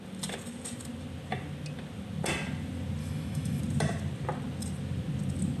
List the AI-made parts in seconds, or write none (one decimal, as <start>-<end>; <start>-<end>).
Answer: 3.0-3.6